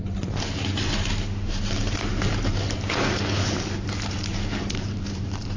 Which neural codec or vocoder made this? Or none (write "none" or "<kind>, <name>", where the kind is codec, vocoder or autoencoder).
vocoder, BigVGAN v2